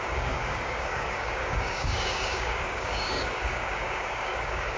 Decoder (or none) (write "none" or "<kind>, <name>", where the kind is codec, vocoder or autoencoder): codec, DAC